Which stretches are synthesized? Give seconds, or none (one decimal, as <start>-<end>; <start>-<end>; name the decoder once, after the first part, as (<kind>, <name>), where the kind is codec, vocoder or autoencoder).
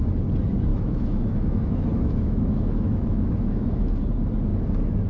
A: 0.7-3.8 (autoencoder, DAC-VAE)